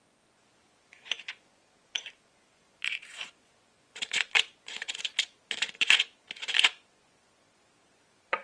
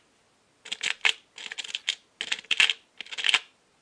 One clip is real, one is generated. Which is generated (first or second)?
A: first